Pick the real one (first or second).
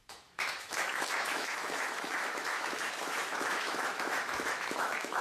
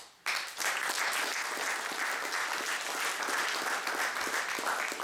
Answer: second